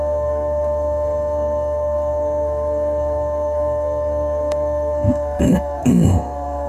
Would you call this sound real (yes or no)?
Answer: no